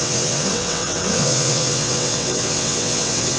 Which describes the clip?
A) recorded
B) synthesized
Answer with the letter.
B